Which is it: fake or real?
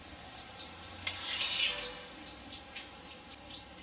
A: real